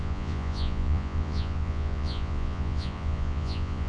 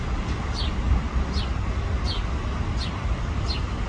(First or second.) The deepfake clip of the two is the first